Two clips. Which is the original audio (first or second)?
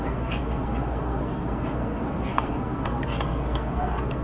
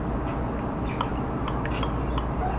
second